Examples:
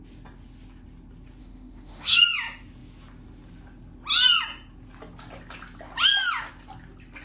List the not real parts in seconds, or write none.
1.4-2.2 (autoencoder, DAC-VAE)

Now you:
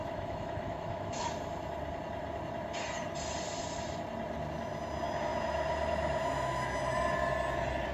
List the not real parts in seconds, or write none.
0.0-1.3 (autoencoder, DAC-VAE)